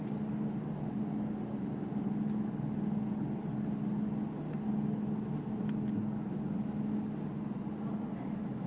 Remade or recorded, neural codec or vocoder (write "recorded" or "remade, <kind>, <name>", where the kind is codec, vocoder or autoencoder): recorded